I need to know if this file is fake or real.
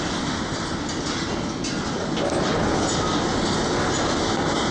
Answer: real